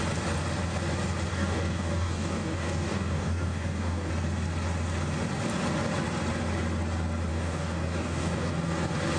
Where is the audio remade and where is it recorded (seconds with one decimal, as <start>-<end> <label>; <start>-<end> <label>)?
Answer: 0.0-1.3 recorded; 1.3-4.1 remade; 4.1-7.3 recorded; 7.3-8.5 remade; 8.5-9.2 recorded